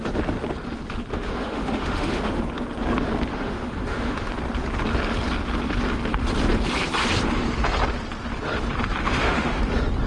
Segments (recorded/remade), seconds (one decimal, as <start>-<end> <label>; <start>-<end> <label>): 0.0-1.1 recorded; 1.1-2.4 remade; 2.4-3.3 recorded; 3.3-4.3 remade; 4.3-9.0 recorded; 9.0-9.6 remade; 9.6-10.1 recorded